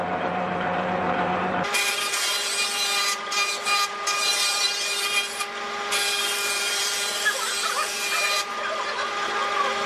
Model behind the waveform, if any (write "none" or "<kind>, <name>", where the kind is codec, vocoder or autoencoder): vocoder, BigVGAN v2